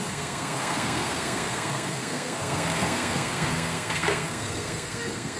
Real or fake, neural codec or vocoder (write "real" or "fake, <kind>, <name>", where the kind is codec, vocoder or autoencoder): fake, codec, SNAC